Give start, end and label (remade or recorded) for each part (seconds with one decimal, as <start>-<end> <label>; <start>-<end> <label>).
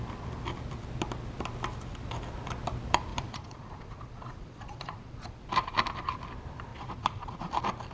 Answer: 0.0-3.1 recorded; 3.1-5.4 remade; 5.4-6.7 recorded; 6.7-7.5 remade; 7.5-7.9 recorded